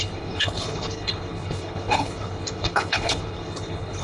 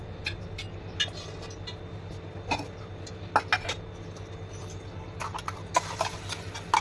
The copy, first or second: first